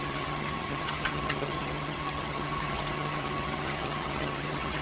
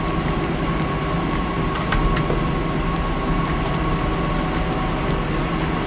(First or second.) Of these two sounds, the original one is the second